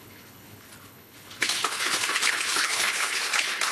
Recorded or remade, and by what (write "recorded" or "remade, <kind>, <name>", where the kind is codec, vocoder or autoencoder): remade, codec, HILCodec